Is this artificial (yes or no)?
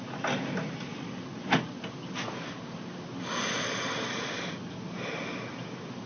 no